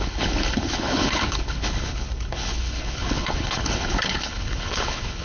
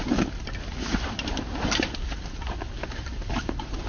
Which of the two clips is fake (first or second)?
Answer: first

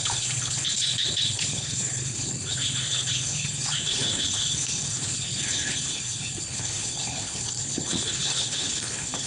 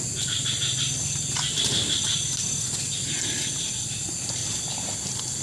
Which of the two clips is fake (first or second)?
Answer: first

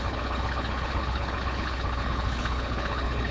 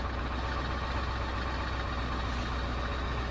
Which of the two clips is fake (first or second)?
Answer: first